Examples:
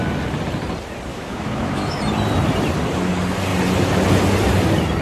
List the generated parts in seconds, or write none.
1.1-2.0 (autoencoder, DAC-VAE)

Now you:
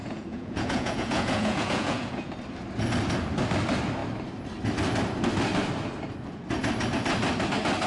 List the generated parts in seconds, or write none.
0.0-2.3 (vocoder, Vocos)